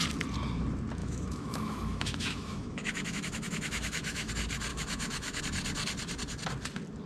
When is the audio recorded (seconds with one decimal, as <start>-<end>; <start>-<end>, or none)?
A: 0.0-1.0; 4.3-4.7; 5.4-7.1